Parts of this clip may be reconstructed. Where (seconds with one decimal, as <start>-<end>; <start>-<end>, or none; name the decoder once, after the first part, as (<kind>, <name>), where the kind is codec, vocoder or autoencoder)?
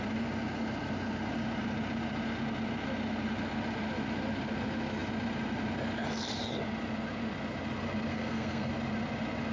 8.1-8.7 (codec, SNAC)